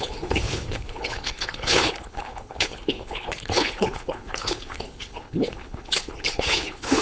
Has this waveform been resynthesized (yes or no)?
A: yes